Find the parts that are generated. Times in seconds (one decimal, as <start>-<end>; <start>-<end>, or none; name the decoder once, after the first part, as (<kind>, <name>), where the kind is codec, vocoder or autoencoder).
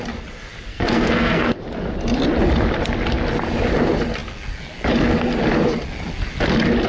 0.7-1.6 (codec, SNAC)